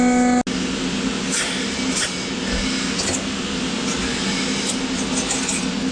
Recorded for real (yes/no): yes